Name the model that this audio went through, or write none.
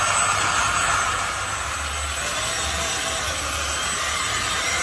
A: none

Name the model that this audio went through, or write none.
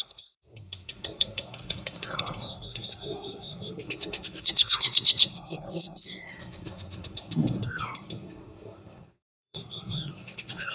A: codec, SNAC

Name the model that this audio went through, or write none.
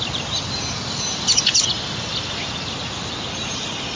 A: none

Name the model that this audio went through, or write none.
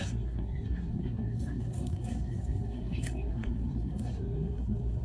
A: codec, SNAC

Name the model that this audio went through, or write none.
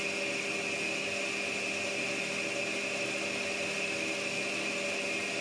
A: none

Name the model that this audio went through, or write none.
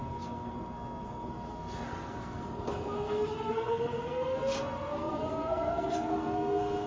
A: codec, SNAC